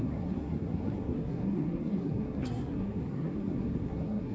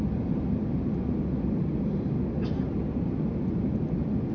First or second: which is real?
second